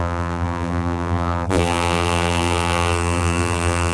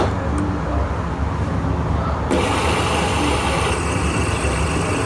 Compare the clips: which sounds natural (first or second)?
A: second